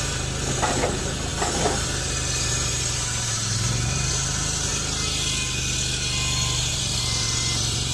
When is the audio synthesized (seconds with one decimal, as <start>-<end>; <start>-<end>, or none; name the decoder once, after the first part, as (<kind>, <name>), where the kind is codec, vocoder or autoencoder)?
0.0-4.7 (vocoder, BigVGAN v2); 6.7-7.9

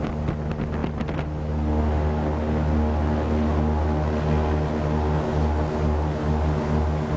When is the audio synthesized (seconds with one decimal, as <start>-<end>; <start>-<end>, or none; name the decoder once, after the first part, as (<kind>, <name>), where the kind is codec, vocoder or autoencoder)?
none

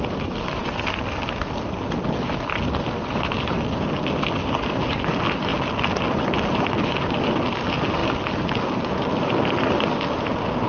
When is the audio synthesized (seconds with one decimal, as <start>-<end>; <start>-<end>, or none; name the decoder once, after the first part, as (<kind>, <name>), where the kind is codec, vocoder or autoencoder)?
none

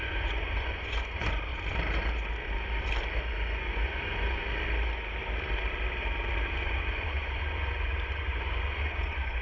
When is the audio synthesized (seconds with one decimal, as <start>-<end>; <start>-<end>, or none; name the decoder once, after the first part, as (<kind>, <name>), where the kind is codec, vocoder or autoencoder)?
0.0-1.5 (vocoder, Vocos); 3.3-4.4; 6.5-9.4

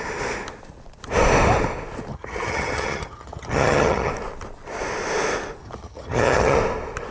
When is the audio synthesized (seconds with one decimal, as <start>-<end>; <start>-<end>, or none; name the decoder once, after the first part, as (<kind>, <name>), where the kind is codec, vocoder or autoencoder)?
2.1-4.1 (vocoder, HiFi-GAN); 5.6-6.6

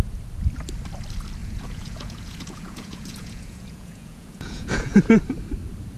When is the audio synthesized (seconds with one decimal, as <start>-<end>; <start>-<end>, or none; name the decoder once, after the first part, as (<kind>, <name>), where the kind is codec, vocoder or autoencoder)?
1.4-5.0 (vocoder, Vocos)

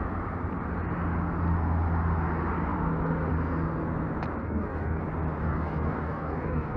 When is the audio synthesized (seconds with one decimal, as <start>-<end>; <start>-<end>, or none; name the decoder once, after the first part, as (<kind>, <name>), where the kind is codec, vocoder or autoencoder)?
4.4-5.0 (codec, DAC); 5.4-6.8

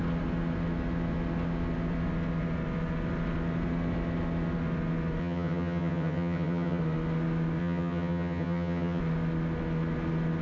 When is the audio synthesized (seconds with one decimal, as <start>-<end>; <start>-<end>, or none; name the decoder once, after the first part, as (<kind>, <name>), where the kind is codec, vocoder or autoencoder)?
5.2-6.8 (vocoder, HiFi-GAN); 7.6-9.0